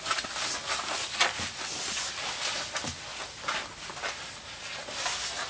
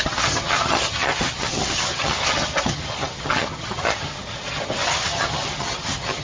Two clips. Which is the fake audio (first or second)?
second